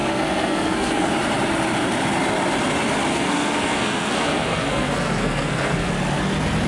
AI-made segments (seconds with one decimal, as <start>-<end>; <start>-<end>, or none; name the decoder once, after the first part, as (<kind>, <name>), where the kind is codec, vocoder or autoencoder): 0.0-1.1 (codec, SNAC); 3.1-5.9